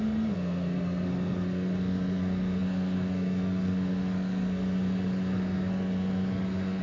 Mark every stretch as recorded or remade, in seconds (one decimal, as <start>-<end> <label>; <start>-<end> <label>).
0.0-6.8 remade